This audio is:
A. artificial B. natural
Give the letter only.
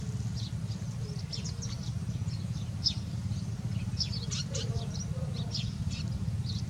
B